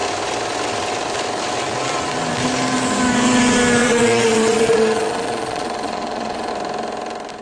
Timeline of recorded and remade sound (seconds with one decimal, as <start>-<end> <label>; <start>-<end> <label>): 0.0-3.8 recorded; 3.8-6.5 remade; 6.5-7.4 recorded